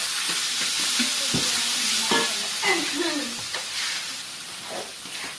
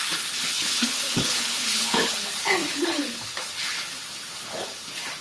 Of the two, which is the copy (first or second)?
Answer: second